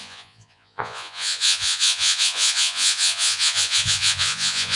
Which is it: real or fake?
fake